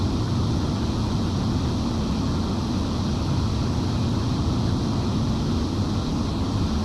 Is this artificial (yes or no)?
no